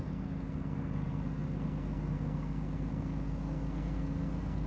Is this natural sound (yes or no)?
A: no